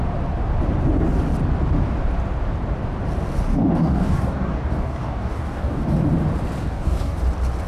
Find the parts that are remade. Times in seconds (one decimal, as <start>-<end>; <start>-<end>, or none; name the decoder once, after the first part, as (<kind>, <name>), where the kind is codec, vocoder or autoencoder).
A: 3.5-5.9 (codec, DAC); 6.6-7.2